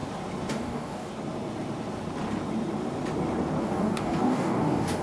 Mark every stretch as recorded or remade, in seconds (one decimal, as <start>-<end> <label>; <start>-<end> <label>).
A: 0.0-0.5 recorded; 0.5-1.1 remade; 1.1-3.6 recorded; 3.6-5.0 remade